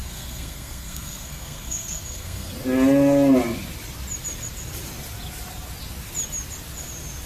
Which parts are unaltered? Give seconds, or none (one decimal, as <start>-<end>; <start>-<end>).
2.5-7.3